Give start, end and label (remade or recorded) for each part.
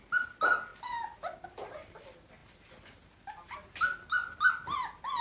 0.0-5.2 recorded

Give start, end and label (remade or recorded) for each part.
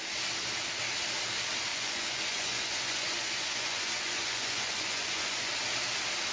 0.0-1.7 recorded; 1.7-5.5 remade; 5.5-6.3 recorded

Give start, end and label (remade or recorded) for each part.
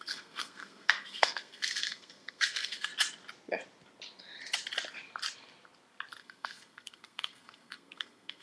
0.0-2.9 remade; 2.9-6.2 recorded; 6.2-8.4 remade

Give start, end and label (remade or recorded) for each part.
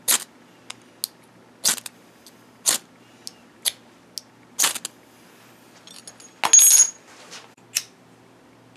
0.0-8.8 recorded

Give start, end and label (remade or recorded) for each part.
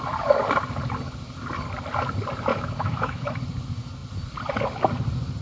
0.0-2.5 recorded; 2.5-3.4 remade; 3.4-5.4 recorded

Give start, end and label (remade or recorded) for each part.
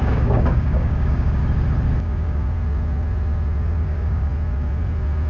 0.0-1.4 remade; 1.4-2.0 recorded; 2.0-2.4 remade; 2.4-3.8 recorded; 3.8-4.3 remade; 4.3-5.3 recorded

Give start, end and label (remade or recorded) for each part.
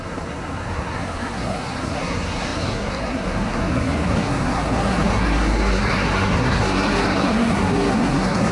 0.0-8.5 remade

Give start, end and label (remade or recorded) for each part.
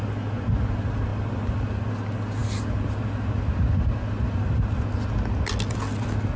0.0-6.4 recorded